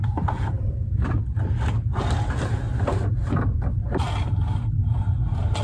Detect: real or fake real